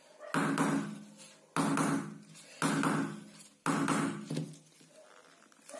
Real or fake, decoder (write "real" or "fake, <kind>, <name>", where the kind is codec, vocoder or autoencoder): real